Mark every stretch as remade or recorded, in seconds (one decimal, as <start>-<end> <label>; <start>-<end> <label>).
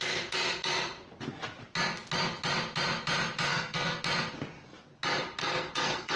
0.0-3.5 recorded; 3.5-4.0 remade; 4.0-5.4 recorded; 5.4-6.2 remade